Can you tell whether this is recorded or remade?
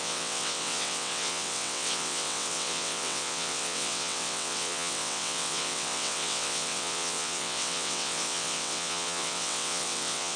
remade